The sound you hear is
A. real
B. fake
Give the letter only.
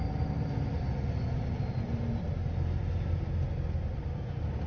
A